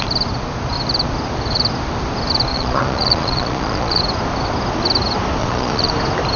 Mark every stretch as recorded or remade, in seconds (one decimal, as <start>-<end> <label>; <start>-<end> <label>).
0.0-2.5 recorded; 2.5-4.0 remade; 4.0-5.4 recorded; 5.4-5.9 remade; 5.9-6.4 recorded